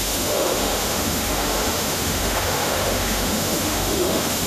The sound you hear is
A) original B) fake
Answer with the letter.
B